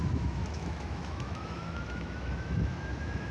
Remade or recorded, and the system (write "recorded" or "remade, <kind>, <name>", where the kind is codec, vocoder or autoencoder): remade, autoencoder, DAC-VAE